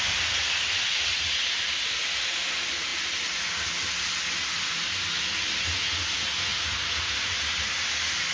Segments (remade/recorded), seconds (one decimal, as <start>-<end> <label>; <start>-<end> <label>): 0.0-8.3 recorded